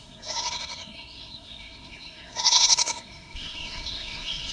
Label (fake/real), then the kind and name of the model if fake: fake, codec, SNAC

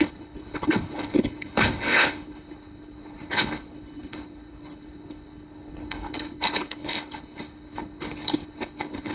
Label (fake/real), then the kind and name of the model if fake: fake, codec, HILCodec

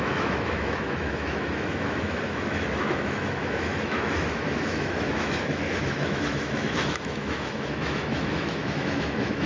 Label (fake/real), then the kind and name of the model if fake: fake, autoencoder, DAC-VAE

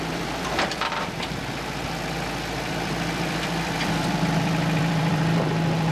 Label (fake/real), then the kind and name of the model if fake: fake, vocoder, BigVGAN v2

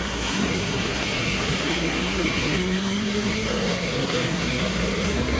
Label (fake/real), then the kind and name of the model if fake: fake, codec, SNAC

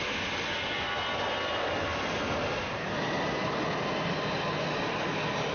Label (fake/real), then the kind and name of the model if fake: real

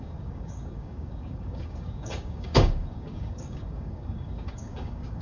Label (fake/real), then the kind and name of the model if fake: fake, codec, DAC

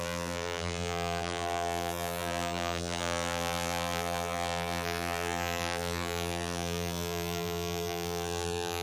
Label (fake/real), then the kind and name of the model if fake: fake, vocoder, BigVGAN v2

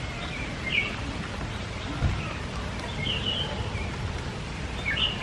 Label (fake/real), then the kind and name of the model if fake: real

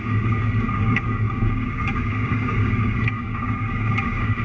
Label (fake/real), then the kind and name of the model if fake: fake, codec, DAC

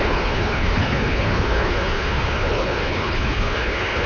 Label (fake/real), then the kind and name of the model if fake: fake, codec, HILCodec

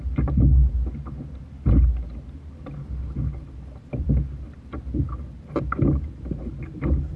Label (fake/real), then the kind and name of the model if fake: real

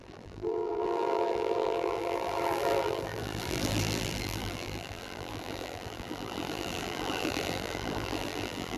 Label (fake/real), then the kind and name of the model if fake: fake, vocoder, BigVGAN v2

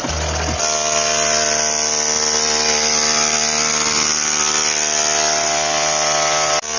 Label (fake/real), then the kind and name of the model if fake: real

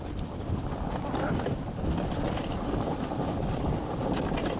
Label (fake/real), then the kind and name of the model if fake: real